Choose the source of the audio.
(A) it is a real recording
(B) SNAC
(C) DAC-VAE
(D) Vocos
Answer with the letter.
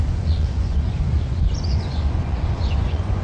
D